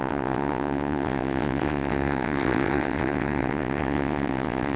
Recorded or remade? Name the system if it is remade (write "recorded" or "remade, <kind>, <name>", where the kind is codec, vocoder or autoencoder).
remade, vocoder, WaveNeXt